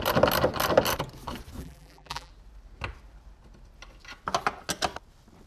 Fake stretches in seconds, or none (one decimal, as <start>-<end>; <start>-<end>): 1.6-2.3